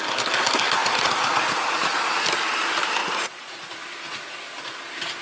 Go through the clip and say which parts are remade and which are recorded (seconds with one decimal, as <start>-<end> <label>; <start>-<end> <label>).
0.0-0.8 recorded; 0.8-2.0 remade; 2.0-3.0 recorded; 3.0-3.7 remade; 3.7-5.2 recorded